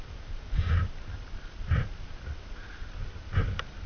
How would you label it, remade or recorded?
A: recorded